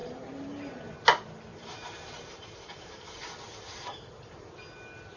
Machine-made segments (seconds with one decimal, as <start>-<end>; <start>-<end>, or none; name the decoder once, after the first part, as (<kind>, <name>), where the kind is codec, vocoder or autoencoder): 0.0-0.9 (vocoder, BigVGAN v2); 1.5-4.5